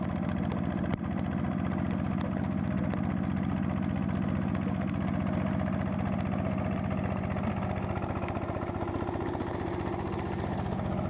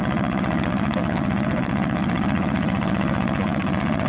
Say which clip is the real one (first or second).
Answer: first